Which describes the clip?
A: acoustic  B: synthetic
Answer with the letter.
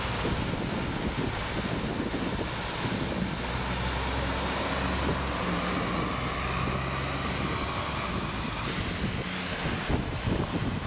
A